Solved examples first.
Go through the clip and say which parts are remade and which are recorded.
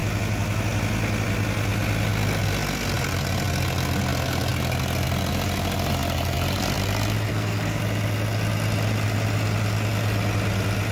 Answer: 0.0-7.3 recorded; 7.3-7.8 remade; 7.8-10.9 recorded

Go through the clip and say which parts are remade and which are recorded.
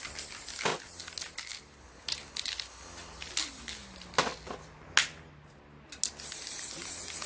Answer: 0.0-7.3 recorded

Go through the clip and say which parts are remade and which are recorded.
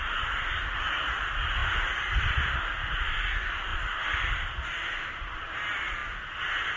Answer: 0.0-1.6 recorded; 1.6-2.7 remade; 2.7-3.7 recorded; 3.7-4.3 remade; 4.3-6.8 recorded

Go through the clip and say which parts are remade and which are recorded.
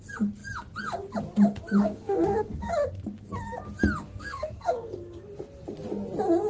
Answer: 0.0-1.8 recorded; 1.8-2.7 remade; 2.7-4.1 recorded; 4.1-5.2 remade; 5.2-6.5 recorded